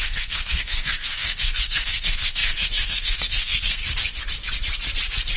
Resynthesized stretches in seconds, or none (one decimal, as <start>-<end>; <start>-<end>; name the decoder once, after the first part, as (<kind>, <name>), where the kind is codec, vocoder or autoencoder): 0.0-3.8 (codec, SNAC)